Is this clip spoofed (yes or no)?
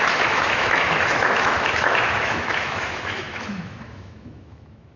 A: yes